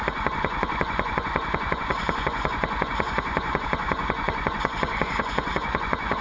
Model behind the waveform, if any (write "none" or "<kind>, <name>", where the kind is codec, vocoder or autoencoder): vocoder, Vocos